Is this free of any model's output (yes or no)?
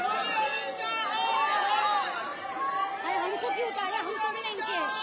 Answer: yes